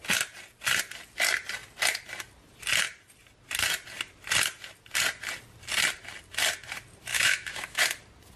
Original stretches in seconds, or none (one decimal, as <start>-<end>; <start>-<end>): 0.0-7.1; 7.8-8.4